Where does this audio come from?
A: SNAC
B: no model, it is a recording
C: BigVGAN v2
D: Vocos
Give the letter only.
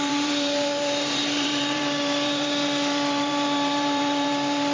C